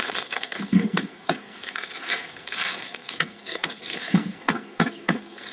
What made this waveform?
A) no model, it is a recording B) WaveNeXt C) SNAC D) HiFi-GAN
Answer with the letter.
C